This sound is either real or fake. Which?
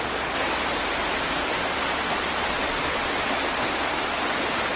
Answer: real